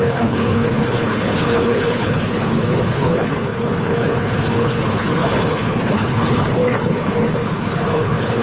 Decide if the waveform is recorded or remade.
remade